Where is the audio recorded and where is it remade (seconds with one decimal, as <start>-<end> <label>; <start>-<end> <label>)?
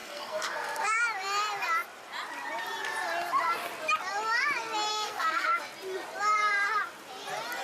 0.0-1.0 remade; 1.0-4.9 recorded; 4.9-5.6 remade; 5.6-7.6 recorded